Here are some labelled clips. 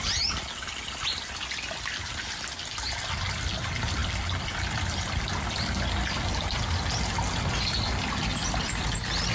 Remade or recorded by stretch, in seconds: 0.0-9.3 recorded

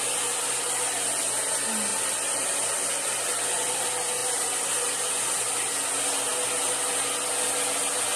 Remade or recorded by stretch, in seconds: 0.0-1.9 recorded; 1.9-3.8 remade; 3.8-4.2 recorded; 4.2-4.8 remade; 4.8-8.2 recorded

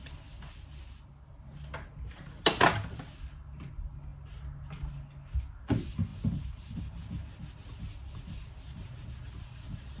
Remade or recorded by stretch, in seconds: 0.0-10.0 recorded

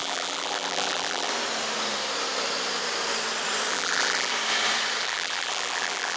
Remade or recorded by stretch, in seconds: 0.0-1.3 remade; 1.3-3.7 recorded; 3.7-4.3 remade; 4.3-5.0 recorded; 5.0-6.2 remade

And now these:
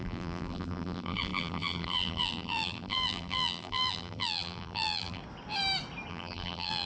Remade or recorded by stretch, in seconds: 0.0-5.2 remade; 5.2-6.1 recorded; 6.1-6.9 remade